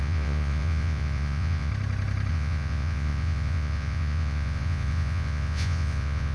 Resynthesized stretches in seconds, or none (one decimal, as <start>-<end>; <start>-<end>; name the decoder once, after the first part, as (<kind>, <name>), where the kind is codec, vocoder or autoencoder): 0.0-1.7 (vocoder, Vocos); 2.3-6.3